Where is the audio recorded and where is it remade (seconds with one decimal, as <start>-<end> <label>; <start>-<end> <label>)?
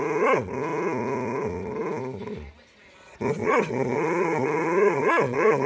0.0-3.4 recorded; 3.4-5.7 remade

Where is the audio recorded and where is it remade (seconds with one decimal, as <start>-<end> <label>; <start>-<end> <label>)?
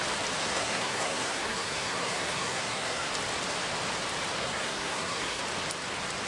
0.0-0.4 recorded; 0.4-3.1 remade; 3.1-4.4 recorded; 4.4-5.4 remade; 5.4-6.3 recorded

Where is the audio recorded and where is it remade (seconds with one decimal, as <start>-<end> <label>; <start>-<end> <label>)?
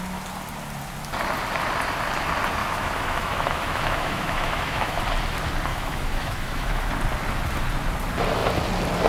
0.0-2.6 recorded; 2.6-5.0 remade; 5.0-5.7 recorded; 5.7-6.9 remade; 6.9-9.1 recorded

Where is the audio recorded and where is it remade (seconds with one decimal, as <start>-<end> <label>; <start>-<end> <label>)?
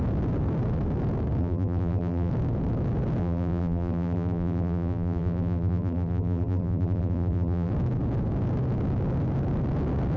0.0-1.4 recorded; 1.4-2.3 remade; 2.3-3.2 recorded; 3.2-7.7 remade; 7.7-10.2 recorded